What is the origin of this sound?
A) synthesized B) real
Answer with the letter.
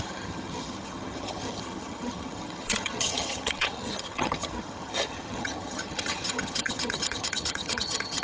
A